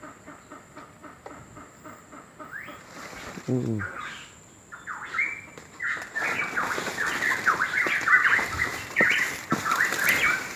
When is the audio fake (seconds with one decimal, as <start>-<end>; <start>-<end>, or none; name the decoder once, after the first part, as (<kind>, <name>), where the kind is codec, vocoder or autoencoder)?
8.7-9.5 (vocoder, BigVGAN v2)